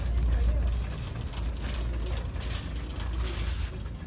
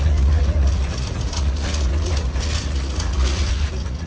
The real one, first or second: first